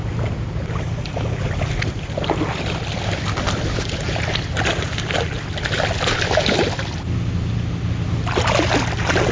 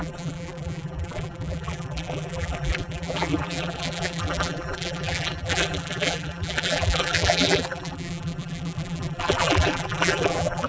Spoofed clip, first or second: second